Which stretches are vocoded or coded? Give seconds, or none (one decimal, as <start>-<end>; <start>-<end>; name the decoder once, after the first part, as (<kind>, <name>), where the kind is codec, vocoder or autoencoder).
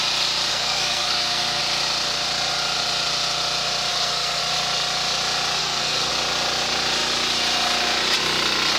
0.5-1.6 (codec, SNAC); 3.9-4.4; 5.6-6.1